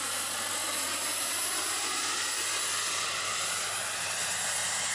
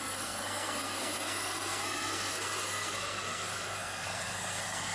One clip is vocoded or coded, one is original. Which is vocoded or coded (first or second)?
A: second